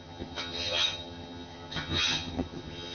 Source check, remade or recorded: remade